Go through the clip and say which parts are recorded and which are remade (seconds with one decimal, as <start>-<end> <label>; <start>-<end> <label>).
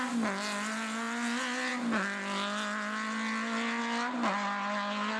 0.0-5.2 recorded